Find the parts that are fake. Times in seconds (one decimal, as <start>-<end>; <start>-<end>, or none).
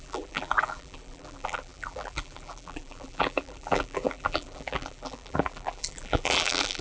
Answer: 0.0-6.8